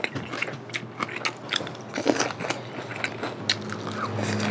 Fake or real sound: real